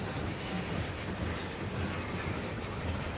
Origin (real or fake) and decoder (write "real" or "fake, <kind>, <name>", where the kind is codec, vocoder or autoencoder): real